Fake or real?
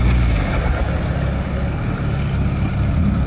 real